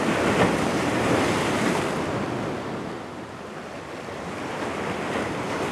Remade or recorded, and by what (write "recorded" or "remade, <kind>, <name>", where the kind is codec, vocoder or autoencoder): recorded